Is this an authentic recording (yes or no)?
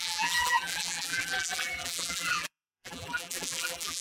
no